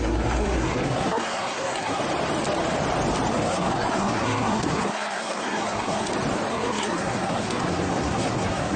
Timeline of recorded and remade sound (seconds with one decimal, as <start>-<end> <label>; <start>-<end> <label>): 0.0-2.0 remade; 2.0-3.3 recorded; 3.3-6.1 remade; 6.1-6.5 recorded; 6.5-8.8 remade